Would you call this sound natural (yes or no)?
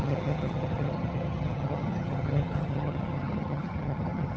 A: no